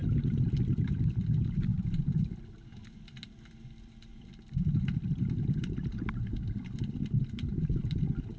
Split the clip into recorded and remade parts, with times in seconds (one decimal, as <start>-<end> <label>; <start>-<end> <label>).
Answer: 0.0-4.1 recorded; 4.1-5.6 remade; 5.6-8.4 recorded